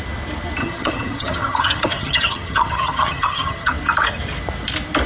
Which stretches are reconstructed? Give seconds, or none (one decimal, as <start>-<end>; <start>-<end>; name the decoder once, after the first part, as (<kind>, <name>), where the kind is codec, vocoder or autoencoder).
0.6-3.7 (vocoder, HiFi-GAN)